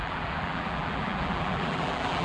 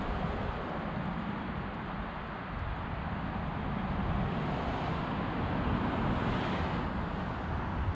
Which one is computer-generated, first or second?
first